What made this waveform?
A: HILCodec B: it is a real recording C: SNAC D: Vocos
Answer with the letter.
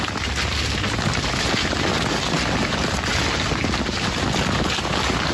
B